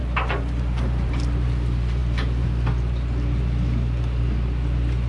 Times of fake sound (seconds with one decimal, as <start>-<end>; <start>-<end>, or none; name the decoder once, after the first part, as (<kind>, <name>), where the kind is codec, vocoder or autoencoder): none